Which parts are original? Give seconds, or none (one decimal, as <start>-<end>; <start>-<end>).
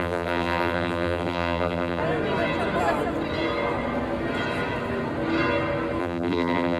2.0-6.0